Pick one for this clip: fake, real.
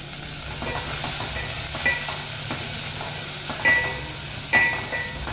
real